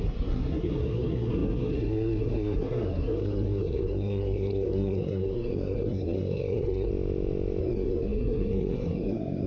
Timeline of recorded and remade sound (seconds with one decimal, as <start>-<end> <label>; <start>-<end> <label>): 0.0-6.9 remade; 6.9-7.6 recorded; 7.6-9.5 remade

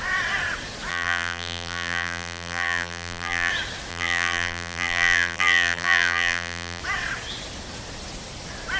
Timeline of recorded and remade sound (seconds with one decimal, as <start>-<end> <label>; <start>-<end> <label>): 0.0-0.9 recorded; 0.9-3.5 remade; 3.5-3.9 recorded; 3.9-6.8 remade; 6.8-8.8 recorded

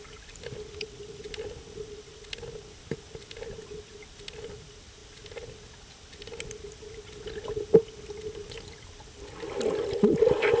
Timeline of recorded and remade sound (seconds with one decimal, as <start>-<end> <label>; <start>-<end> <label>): 0.0-10.6 recorded

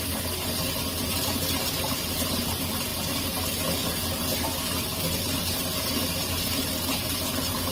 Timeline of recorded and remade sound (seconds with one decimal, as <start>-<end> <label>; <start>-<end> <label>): 0.0-7.7 recorded

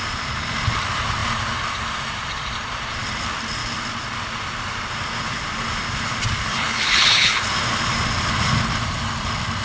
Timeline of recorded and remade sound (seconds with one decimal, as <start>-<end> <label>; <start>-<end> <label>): 0.0-6.5 recorded; 6.5-7.4 remade; 7.4-9.6 recorded

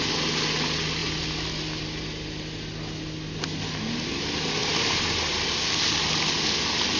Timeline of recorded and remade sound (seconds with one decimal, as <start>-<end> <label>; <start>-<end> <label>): 0.0-7.0 recorded

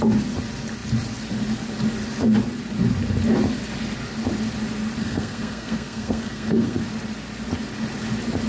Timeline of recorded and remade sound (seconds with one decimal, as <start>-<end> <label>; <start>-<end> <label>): 0.0-5.0 recorded; 5.0-6.8 remade; 6.8-8.5 recorded

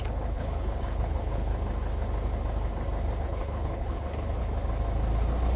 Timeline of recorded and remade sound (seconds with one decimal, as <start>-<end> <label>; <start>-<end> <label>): 0.0-1.5 remade; 1.5-3.2 recorded; 3.2-4.4 remade; 4.4-5.6 recorded